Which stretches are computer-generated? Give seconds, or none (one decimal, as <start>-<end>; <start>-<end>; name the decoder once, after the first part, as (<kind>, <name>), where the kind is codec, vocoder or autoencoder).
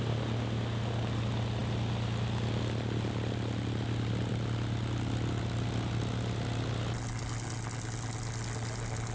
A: none